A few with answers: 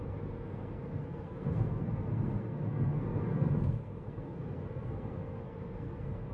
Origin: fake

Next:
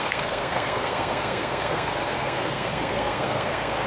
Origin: fake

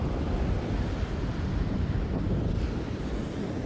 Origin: real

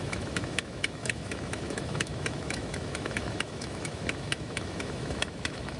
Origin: fake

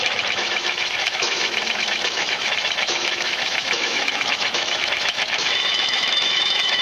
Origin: fake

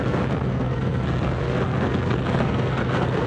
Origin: fake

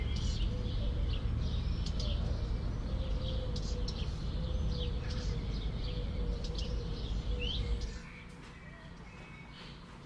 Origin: real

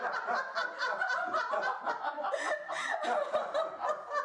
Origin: real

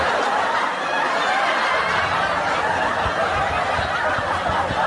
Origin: real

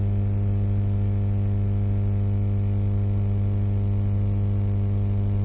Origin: real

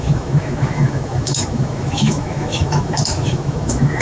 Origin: fake